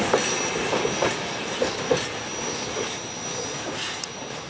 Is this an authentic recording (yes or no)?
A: yes